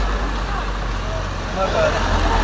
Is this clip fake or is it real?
real